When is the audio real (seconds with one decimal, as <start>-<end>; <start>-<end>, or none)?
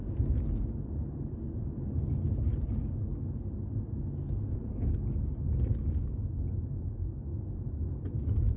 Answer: 0.0-4.7; 7.3-8.1